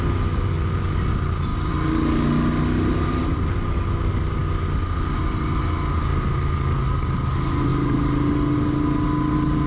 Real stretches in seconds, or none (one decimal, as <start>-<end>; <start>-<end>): 0.0-9.7